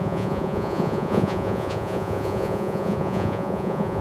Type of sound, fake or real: fake